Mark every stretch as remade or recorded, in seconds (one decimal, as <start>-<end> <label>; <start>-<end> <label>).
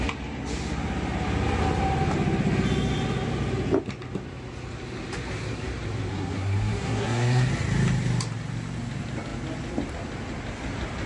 0.0-6.1 recorded; 6.1-7.5 remade; 7.5-11.1 recorded